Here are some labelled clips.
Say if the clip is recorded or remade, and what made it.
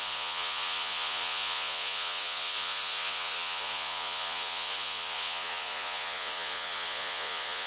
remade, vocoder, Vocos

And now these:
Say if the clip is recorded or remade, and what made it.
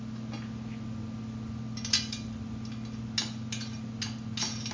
recorded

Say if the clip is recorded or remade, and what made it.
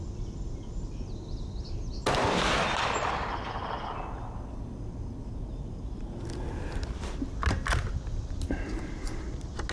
recorded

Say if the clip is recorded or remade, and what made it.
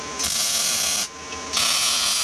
recorded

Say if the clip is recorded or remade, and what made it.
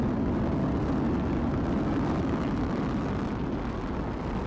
recorded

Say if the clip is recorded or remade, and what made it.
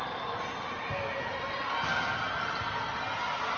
recorded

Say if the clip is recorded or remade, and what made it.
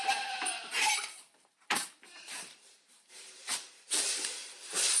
remade, vocoder, BigVGAN v2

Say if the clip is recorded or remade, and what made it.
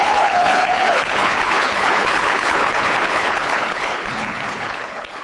remade, codec, HILCodec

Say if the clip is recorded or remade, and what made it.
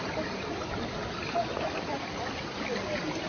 recorded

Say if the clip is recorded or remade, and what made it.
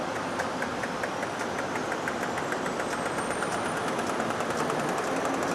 recorded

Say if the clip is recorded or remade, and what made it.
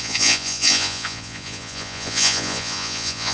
remade, vocoder, Vocos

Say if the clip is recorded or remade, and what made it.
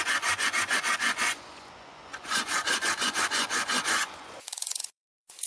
remade, vocoder, Vocos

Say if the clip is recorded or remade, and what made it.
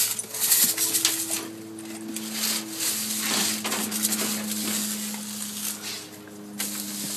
recorded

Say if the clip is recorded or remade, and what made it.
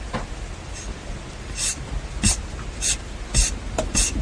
recorded